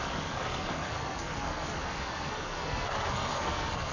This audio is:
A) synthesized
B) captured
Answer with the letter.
A